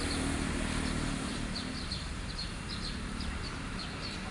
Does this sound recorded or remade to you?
remade